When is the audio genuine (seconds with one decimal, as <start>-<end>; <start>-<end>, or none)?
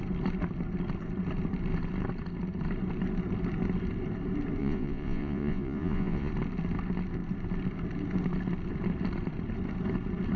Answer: 0.0-4.6; 6.3-10.4